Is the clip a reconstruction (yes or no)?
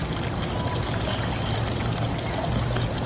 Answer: no